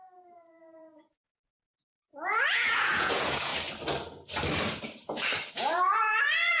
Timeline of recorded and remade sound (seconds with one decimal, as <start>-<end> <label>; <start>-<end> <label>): 0.0-3.5 remade; 3.5-5.5 recorded; 5.5-6.6 remade